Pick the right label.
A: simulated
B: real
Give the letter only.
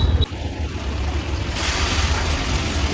B